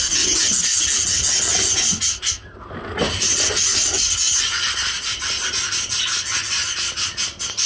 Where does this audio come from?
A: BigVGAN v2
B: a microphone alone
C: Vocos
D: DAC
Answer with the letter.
B